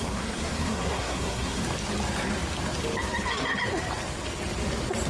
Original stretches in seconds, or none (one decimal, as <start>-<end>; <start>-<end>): 1.6-5.1